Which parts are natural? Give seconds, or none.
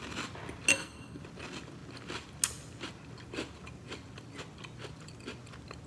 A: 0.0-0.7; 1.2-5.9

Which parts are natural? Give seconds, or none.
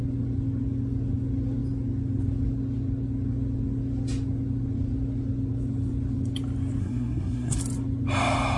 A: 0.0-6.8; 7.6-8.6